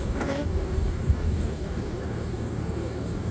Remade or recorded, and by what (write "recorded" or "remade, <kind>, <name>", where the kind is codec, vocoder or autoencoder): remade, codec, DAC